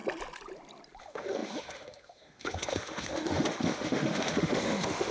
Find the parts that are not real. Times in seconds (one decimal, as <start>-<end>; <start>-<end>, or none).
1.0-5.1